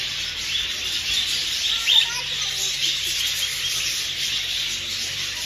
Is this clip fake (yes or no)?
no